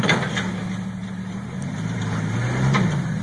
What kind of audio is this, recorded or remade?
remade